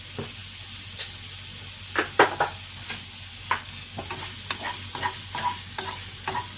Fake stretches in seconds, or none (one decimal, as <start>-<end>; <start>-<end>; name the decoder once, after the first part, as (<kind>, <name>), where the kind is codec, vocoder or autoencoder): 3.3-4.0 (codec, DAC)